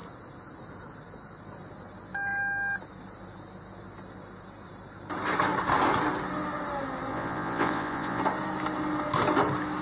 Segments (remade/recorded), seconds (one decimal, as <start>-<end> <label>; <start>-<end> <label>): 0.0-7.1 recorded; 7.1-8.2 remade; 8.2-9.8 recorded